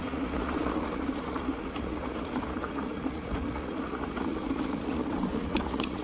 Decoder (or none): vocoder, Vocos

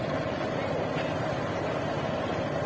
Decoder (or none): none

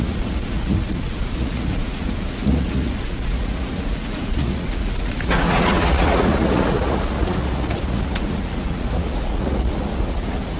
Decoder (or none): vocoder, Vocos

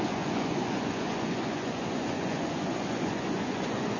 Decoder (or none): vocoder, Vocos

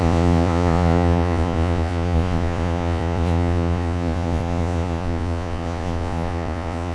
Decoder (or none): vocoder, Vocos